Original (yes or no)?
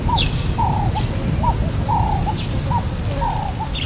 yes